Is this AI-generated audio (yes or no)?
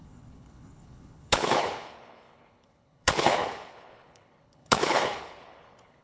yes